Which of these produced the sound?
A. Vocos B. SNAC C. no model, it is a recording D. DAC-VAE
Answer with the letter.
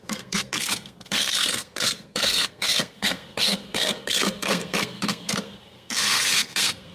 B